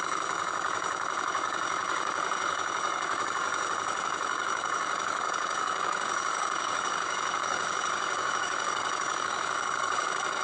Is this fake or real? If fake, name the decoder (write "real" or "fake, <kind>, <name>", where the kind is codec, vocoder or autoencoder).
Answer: fake, codec, DAC